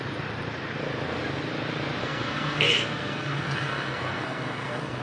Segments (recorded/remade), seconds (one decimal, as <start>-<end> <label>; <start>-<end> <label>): 0.0-2.0 recorded; 2.0-5.0 remade